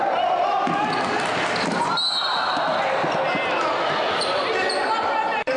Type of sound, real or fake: real